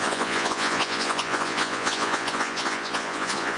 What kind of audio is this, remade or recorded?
remade